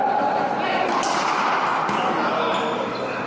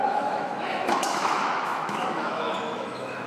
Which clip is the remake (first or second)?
second